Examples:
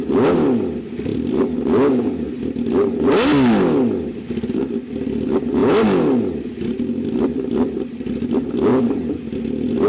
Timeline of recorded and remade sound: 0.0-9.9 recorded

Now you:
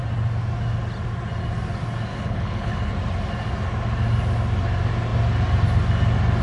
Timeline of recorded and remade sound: 0.0-2.1 recorded; 2.1-2.9 remade; 2.9-6.4 recorded